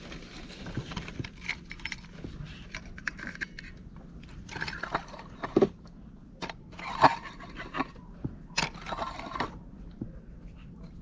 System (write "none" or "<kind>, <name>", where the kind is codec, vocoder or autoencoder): none